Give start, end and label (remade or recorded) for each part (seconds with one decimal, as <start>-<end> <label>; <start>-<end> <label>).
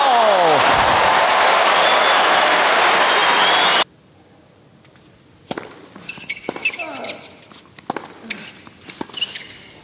0.0-9.8 recorded